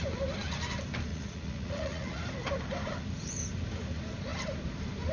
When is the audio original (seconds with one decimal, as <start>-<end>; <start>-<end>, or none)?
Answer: 0.0-1.1; 2.2-5.1